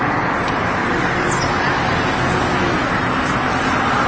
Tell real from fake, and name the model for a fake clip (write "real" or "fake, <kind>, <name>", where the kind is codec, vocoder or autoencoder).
real